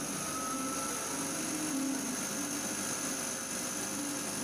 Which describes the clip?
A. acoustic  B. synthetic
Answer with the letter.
A